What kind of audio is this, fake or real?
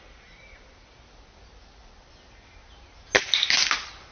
real